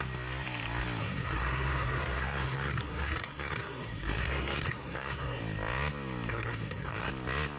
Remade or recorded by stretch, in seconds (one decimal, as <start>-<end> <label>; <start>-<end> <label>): 0.0-1.0 recorded; 1.0-5.4 remade; 5.4-6.3 recorded; 6.3-7.1 remade; 7.1-7.6 recorded